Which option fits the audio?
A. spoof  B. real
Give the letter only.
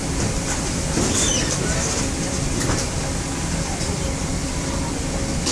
B